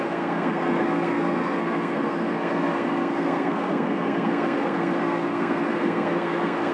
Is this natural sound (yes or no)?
no